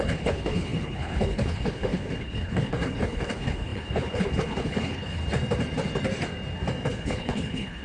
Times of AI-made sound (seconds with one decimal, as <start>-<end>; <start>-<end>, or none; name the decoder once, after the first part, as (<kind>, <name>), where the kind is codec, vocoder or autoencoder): 0.0-5.2 (codec, HILCodec); 6.9-7.8